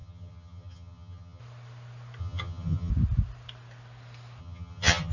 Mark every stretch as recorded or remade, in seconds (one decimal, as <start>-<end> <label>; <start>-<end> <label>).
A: 0.0-1.4 remade; 1.4-2.2 recorded; 2.2-2.9 remade; 2.9-4.4 recorded; 4.4-5.1 remade